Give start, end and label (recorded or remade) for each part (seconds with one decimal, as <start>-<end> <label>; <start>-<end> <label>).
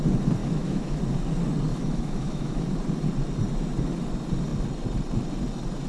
0.0-0.4 recorded; 0.4-1.0 remade; 1.0-1.7 recorded; 1.7-2.6 remade; 2.6-5.9 recorded